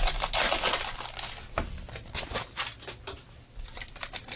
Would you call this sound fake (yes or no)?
no